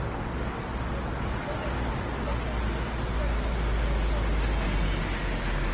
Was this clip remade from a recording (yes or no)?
no